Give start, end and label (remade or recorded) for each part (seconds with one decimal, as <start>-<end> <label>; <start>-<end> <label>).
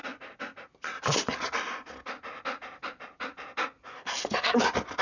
0.0-3.9 recorded; 3.9-4.6 remade; 4.6-5.0 recorded